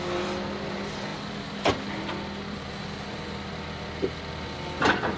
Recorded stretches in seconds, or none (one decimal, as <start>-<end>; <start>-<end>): 0.0-5.2